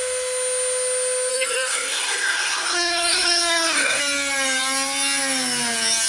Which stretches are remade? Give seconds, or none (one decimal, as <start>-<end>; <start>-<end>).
1.3-4.0